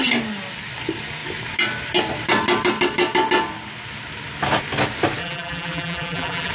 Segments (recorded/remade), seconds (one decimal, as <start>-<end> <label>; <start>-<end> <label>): 0.0-5.2 recorded; 5.2-6.5 remade